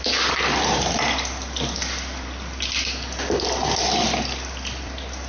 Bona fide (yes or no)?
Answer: yes